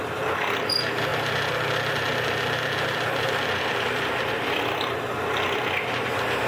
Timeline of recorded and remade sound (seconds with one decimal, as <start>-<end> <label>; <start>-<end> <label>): 0.0-1.1 recorded; 1.1-5.0 remade; 5.0-6.5 recorded